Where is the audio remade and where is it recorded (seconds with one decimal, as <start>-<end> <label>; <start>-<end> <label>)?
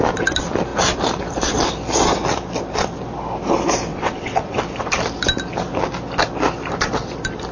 0.0-3.9 recorded; 3.9-4.6 remade; 4.6-7.5 recorded